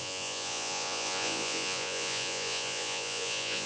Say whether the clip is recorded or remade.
remade